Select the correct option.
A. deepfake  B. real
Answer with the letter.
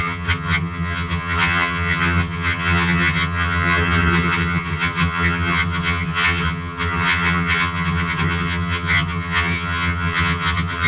A